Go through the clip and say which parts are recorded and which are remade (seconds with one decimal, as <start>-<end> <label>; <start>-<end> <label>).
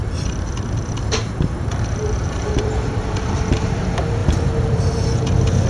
0.0-3.4 remade; 3.4-4.2 recorded; 4.2-5.2 remade; 5.2-5.7 recorded